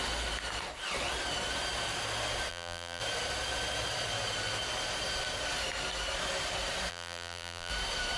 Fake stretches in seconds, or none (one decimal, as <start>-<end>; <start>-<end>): 2.5-3.0; 6.9-7.7